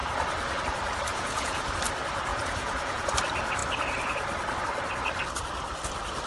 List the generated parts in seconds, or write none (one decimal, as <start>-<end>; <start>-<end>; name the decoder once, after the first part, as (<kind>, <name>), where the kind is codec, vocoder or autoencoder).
1.1-1.7 (vocoder, Vocos); 2.3-3.1